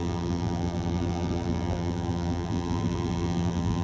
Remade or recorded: remade